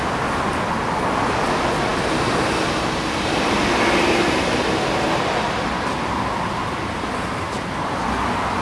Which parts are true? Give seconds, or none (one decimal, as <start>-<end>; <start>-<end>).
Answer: 0.0-8.6

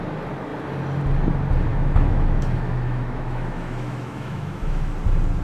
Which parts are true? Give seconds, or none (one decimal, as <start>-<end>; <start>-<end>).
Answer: 0.0-1.7; 4.9-5.4

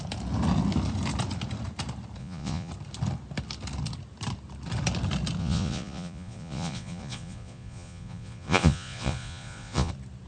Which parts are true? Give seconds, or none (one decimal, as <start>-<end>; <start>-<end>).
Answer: 0.0-2.2; 2.7-5.4; 9.9-10.3

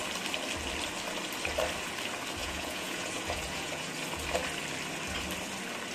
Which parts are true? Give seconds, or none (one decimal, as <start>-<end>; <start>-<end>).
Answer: 0.0-2.4; 3.9-5.9

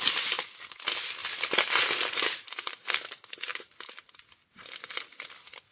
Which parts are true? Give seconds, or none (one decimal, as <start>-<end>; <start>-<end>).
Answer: 0.0-1.2; 1.9-5.7

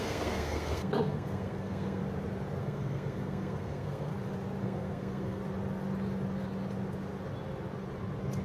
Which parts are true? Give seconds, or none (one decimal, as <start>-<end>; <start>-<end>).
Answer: 2.0-2.6; 4.1-4.6; 5.4-8.4

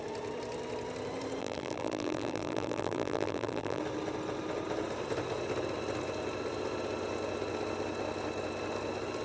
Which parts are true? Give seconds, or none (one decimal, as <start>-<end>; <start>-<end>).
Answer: 0.0-1.4; 3.8-9.2